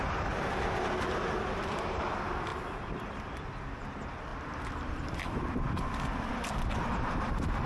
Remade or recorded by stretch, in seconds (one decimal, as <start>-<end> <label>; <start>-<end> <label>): 0.0-1.6 recorded; 1.6-2.5 remade; 2.5-3.0 recorded; 3.0-7.7 remade